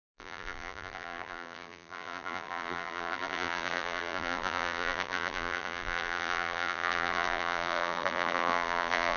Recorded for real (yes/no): no